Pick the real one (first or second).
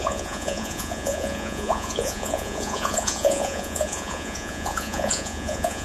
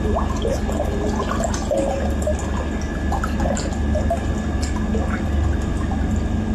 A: second